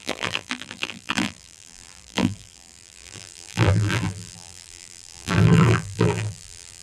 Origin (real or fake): fake